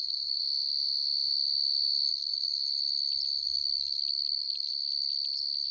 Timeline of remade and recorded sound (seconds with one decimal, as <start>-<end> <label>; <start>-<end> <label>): 0.0-0.4 remade; 0.4-2.1 recorded; 2.1-2.6 remade; 2.6-3.4 recorded; 3.4-4.7 remade; 4.7-5.7 recorded